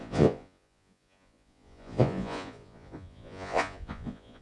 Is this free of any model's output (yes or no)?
no